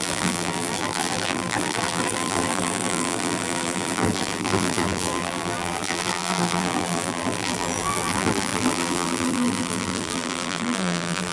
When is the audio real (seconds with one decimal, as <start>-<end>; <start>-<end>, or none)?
none